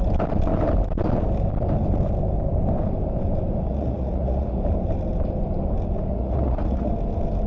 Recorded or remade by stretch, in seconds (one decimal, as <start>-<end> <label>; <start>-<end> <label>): 0.0-3.7 recorded; 3.7-4.6 remade; 4.6-6.1 recorded; 6.1-6.9 remade; 6.9-7.5 recorded